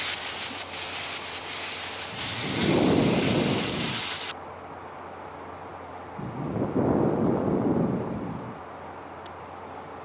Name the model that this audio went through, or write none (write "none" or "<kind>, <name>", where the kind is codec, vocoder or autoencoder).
vocoder, BigVGAN v2